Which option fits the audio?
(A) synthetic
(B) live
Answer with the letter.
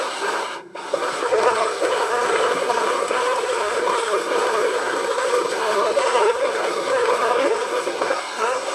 A